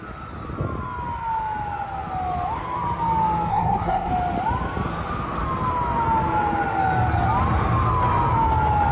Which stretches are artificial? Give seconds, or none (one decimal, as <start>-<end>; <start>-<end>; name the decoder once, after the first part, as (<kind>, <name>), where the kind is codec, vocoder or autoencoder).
3.5-4.1 (codec, SNAC)